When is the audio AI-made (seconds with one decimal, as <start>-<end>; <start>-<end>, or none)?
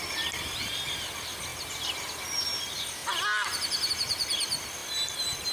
none